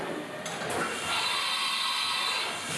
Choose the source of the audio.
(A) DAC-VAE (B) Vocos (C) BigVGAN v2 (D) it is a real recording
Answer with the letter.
D